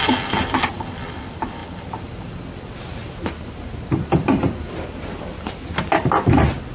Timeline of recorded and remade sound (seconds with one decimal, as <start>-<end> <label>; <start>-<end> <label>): 0.0-6.7 recorded